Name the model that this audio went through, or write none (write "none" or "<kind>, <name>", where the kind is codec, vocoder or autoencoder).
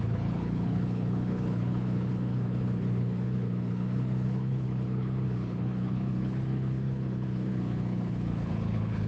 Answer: codec, HILCodec